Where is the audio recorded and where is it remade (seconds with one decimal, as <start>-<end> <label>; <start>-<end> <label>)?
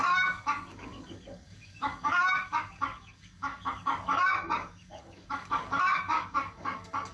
0.0-7.1 remade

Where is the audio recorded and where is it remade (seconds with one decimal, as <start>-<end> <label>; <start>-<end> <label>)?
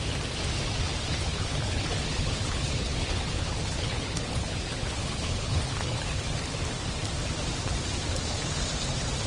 0.0-1.3 recorded; 1.3-6.2 remade; 6.2-9.3 recorded